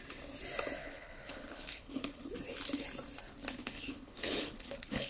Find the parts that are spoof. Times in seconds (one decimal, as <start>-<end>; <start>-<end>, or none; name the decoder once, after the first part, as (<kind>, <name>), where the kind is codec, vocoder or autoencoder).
0.8-2.3 (codec, HILCodec); 3.6-5.1